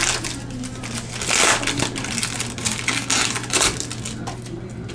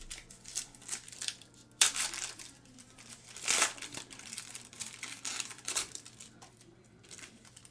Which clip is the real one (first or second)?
first